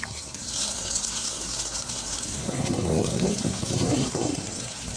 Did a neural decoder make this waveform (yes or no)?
yes